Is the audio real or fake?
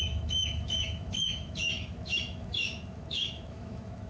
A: fake